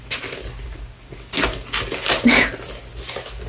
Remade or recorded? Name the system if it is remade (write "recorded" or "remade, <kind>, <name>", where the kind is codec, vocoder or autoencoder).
recorded